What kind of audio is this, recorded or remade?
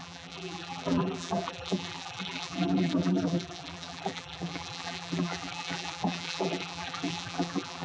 remade